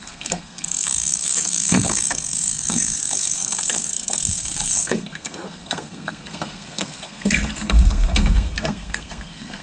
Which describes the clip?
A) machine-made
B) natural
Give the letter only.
A